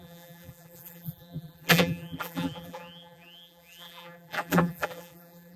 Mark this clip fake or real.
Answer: fake